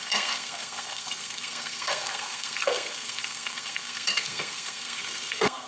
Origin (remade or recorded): remade